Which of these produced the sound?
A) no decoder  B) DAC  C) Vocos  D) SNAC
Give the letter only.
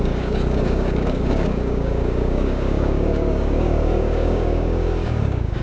B